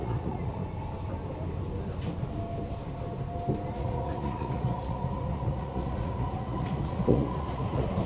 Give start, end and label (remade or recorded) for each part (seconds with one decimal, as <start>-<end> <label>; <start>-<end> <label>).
0.0-0.6 remade; 0.6-3.7 recorded; 3.7-8.1 remade